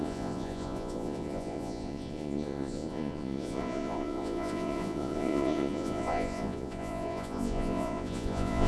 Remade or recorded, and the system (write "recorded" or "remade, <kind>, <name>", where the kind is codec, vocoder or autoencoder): remade, vocoder, Vocos